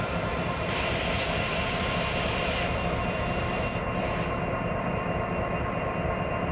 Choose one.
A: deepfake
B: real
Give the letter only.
A